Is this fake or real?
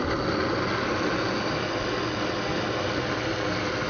real